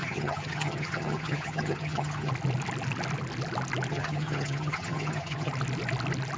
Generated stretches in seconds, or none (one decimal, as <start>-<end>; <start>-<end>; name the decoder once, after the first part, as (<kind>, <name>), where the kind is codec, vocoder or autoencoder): 0.0-2.3 (vocoder, HiFi-GAN); 3.9-5.5